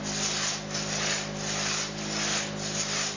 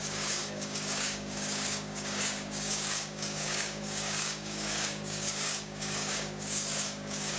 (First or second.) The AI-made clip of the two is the second